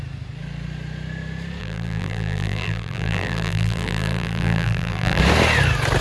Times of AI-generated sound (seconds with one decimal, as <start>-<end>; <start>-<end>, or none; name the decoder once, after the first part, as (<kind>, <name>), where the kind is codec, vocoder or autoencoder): 1.6-5.2 (vocoder, BigVGAN v2)